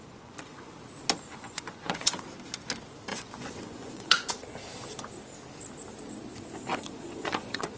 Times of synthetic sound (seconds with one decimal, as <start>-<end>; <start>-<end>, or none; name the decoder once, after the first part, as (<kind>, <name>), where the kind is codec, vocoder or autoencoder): 0.0-0.7 (vocoder, Vocos); 1.3-2.2; 3.1-4.3; 6.7-7.8